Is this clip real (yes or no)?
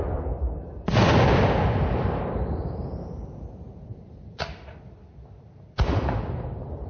yes